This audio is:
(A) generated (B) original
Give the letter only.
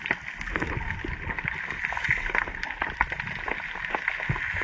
B